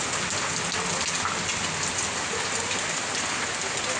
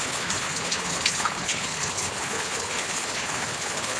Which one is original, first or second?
first